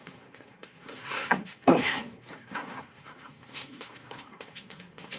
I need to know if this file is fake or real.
fake